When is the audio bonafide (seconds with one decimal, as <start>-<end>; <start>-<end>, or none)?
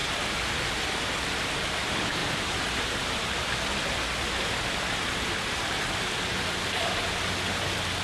0.0-8.0